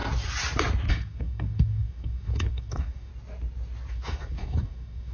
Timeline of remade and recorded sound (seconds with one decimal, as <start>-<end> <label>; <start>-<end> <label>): 0.0-0.9 recorded; 0.9-3.1 remade; 3.1-3.9 recorded; 3.9-5.1 remade